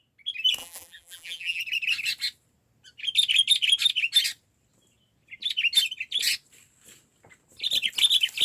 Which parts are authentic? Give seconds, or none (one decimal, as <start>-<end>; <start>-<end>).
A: 0.0-0.6; 1.6-8.4